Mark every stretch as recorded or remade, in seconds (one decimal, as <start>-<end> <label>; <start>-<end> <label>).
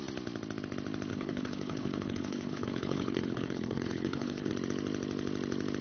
0.0-1.1 recorded; 1.1-4.5 remade; 4.5-5.8 recorded